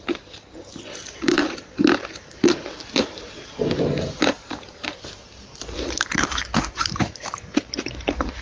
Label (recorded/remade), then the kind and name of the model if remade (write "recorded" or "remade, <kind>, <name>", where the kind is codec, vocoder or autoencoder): remade, vocoder, BigVGAN v2